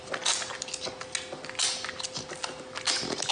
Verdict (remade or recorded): recorded